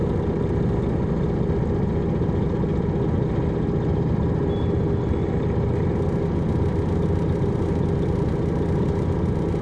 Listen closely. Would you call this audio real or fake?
real